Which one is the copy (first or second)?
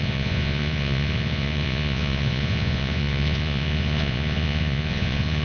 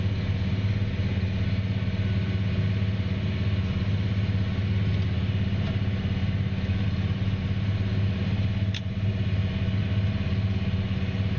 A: first